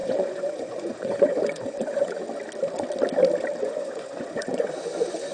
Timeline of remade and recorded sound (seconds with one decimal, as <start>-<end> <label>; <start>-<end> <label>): 0.0-2.2 remade; 2.2-3.6 recorded; 3.6-5.3 remade